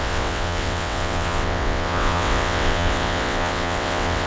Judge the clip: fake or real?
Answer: fake